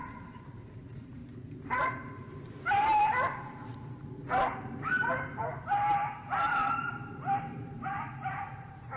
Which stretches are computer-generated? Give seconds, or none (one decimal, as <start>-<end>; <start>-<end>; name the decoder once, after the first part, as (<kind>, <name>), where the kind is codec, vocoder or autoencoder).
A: 0.0-1.2 (vocoder, BigVGAN v2); 4.8-5.4; 7.6-9.0